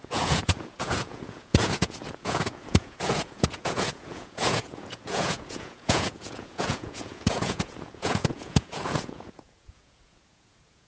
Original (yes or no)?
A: no